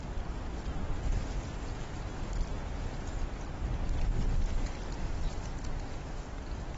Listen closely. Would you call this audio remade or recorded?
recorded